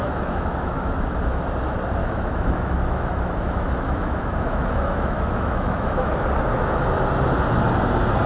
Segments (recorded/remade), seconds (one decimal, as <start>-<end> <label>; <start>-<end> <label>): 0.0-1.4 remade; 1.4-2.0 recorded; 2.0-6.2 remade; 6.2-8.3 recorded